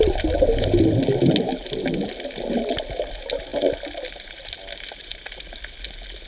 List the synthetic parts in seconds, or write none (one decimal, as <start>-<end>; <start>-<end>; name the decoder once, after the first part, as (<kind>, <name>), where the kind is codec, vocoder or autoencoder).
none